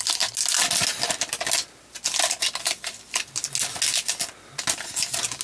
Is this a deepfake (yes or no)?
no